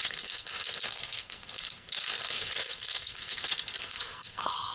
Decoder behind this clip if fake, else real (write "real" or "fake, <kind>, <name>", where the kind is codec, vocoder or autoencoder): fake, codec, SNAC